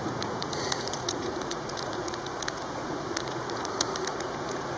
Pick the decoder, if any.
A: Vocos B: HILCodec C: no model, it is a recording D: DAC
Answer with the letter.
A